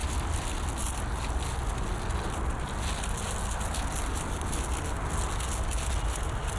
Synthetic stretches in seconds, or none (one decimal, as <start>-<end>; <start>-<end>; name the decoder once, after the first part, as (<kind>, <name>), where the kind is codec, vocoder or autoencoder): none